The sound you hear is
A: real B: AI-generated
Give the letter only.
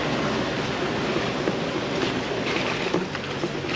A